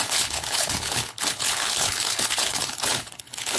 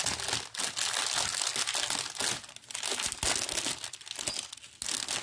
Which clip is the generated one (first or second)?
first